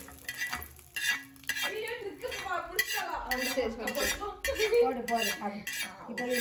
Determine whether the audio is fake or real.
real